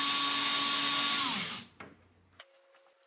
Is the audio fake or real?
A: real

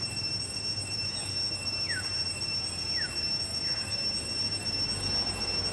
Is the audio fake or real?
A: real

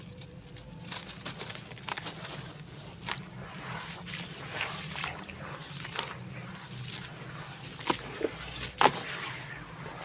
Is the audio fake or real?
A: real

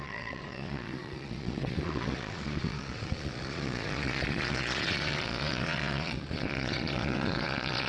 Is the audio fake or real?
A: fake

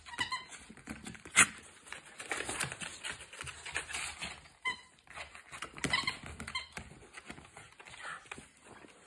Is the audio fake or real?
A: real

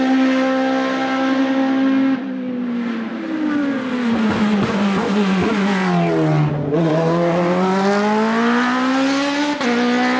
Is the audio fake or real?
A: real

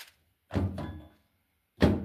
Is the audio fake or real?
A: real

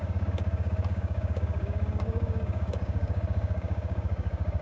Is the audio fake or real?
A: fake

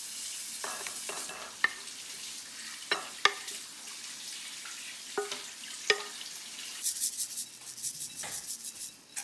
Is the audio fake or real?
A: real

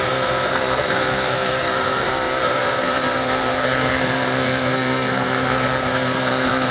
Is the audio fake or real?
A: fake